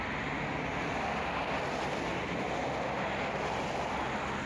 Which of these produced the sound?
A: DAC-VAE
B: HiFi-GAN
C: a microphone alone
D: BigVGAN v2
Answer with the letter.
C